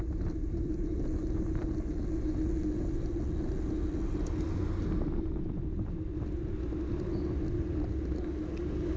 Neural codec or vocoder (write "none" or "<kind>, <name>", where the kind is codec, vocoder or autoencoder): none